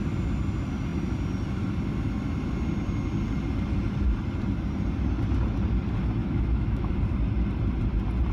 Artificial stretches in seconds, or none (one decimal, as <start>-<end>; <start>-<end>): 6.2-6.9